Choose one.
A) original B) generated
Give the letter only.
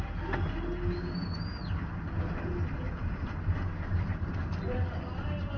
A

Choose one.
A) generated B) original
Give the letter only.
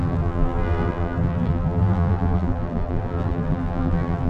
A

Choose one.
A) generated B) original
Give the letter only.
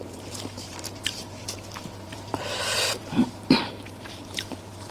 A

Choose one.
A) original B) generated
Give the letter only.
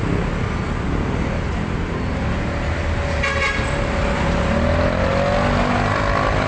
A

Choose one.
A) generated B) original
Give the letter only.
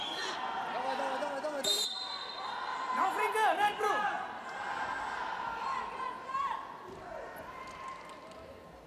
B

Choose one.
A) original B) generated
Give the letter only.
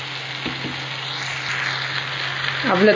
A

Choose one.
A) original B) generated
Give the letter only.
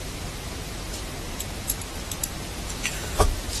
B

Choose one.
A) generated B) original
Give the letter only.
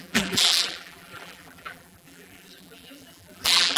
A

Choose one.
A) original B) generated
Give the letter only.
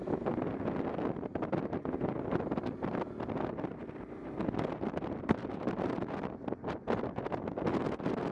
A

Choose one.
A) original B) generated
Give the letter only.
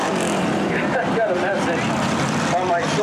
B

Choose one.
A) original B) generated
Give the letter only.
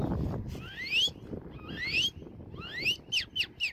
A